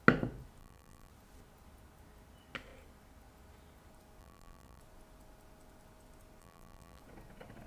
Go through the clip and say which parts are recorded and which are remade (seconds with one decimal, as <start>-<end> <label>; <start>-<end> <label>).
0.0-0.6 recorded; 0.6-1.1 remade; 1.1-4.2 recorded; 4.2-4.8 remade; 4.8-6.4 recorded; 6.4-7.0 remade; 7.0-7.7 recorded